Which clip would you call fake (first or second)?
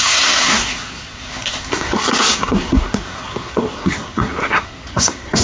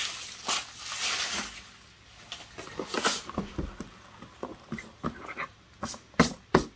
first